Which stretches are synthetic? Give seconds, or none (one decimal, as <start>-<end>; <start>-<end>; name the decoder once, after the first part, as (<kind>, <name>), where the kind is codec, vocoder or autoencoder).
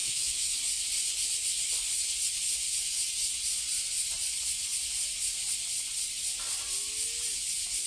0.0-0.6 (autoencoder, DAC-VAE)